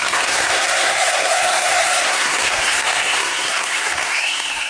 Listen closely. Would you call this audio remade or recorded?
remade